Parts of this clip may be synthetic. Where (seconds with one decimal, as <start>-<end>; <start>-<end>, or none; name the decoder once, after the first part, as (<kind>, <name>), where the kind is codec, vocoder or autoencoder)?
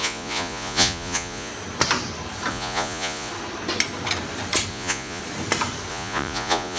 0.0-1.5 (vocoder, Vocos); 2.5-3.3; 4.7-5.2; 5.9-6.8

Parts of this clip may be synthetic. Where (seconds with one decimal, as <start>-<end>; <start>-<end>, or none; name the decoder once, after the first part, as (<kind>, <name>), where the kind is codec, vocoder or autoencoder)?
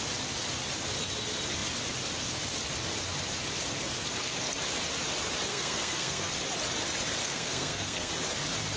5.5-6.3 (codec, SNAC); 7.2-8.1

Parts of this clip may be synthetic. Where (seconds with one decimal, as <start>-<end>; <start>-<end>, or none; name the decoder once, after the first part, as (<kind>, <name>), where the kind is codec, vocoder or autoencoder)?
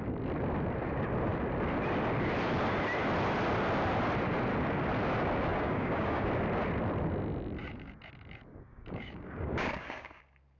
5.5-6.3 (codec, DAC); 8.5-10.2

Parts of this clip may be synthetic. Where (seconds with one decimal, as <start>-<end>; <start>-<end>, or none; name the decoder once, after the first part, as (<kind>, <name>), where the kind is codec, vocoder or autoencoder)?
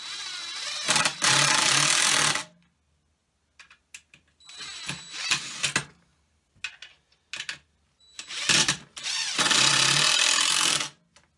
none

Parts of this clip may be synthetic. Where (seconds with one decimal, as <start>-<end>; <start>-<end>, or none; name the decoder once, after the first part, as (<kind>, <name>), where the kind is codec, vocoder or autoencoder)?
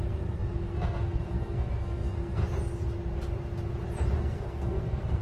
0.0-2.4 (codec, SNAC); 4.2-5.2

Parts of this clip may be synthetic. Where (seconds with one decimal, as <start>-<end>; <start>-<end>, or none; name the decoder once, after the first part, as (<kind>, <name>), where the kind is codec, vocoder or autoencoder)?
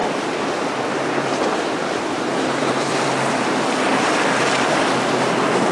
0.0-0.8 (vocoder, BigVGAN v2); 1.8-4.4